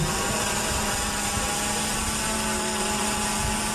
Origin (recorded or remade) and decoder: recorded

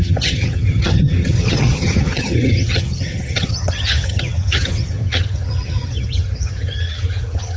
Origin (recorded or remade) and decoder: remade, vocoder, HiFi-GAN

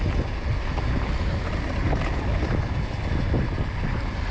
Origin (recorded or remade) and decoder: recorded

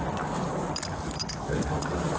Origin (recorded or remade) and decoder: recorded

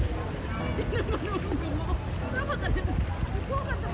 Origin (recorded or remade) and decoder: recorded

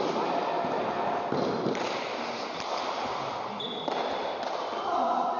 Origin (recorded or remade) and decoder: recorded